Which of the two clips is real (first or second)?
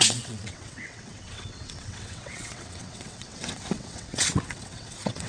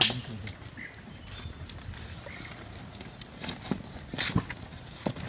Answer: second